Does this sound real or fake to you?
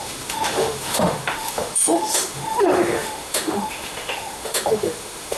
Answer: fake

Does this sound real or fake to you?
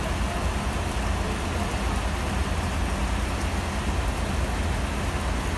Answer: real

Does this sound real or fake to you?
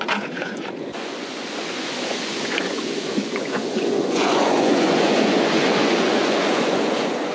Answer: fake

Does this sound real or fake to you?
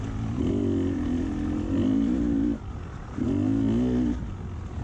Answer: real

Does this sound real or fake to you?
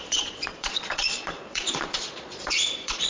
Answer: fake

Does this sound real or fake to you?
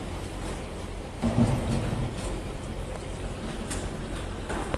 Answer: real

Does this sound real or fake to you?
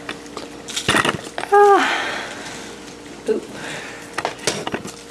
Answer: real